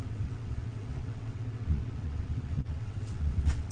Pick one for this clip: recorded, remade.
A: remade